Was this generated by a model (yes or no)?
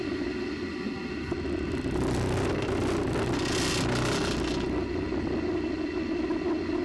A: no